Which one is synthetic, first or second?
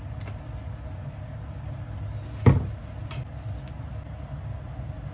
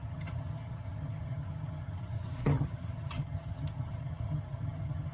second